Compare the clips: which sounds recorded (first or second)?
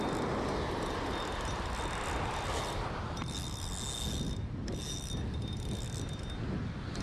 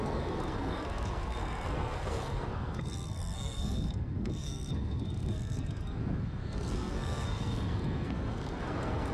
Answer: first